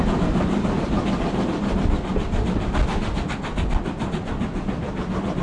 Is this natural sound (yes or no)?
yes